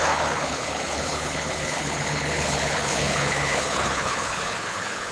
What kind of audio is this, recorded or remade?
remade